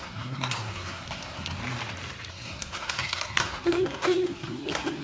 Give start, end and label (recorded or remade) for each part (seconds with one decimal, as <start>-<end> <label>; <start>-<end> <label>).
0.0-1.6 remade; 1.6-2.3 recorded; 2.3-5.0 remade